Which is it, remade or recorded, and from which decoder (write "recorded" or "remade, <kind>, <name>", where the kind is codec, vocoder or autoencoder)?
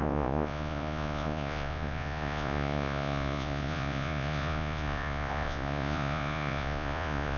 remade, vocoder, Vocos